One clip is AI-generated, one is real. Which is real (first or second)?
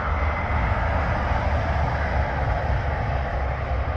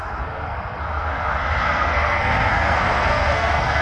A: first